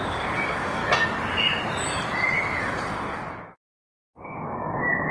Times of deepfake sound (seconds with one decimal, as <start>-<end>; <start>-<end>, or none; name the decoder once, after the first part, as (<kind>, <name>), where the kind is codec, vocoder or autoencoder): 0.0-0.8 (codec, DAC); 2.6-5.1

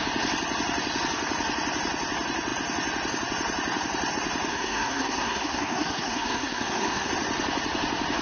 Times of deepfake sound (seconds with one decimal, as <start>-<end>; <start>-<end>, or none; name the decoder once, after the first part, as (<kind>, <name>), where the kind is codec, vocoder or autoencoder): 4.5-7.1 (codec, SNAC)

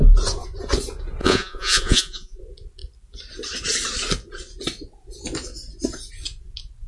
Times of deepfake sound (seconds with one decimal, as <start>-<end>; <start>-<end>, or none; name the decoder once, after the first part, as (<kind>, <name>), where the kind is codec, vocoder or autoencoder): 1.2-2.4 (vocoder, Vocos)